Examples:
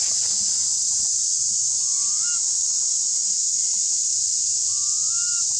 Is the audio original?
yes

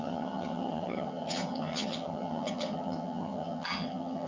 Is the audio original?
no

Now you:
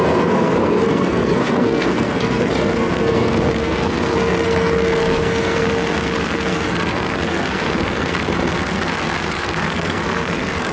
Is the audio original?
no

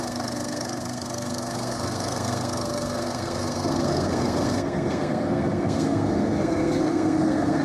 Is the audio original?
no